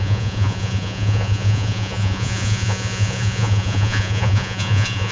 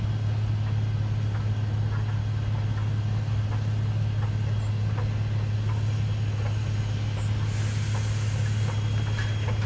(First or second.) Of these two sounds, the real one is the second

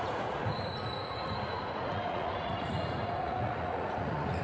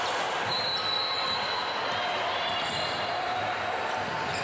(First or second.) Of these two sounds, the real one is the second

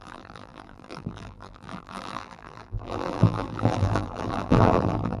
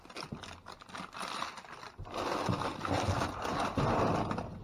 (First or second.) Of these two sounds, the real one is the second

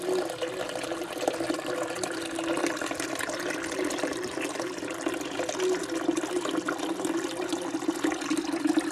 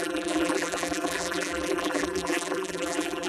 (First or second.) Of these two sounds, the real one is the first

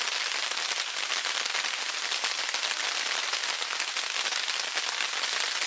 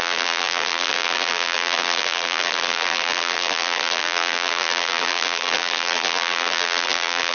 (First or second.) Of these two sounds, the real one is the first